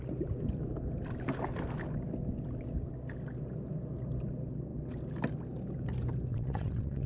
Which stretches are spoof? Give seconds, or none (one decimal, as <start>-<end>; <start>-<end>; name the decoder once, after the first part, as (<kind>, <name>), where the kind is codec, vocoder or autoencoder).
6.3-7.1 (vocoder, WaveNeXt)